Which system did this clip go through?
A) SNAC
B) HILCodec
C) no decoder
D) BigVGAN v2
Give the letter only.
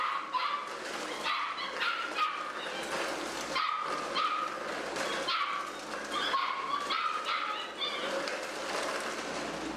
C